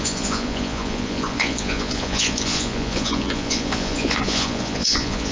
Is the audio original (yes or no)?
no